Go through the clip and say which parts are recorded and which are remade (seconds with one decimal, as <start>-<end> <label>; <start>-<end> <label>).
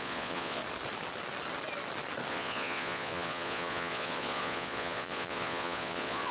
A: 0.0-0.6 remade; 0.6-2.3 recorded; 2.3-6.3 remade